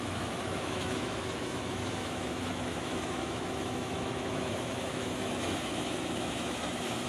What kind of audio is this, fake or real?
fake